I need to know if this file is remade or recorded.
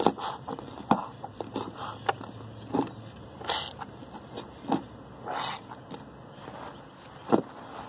recorded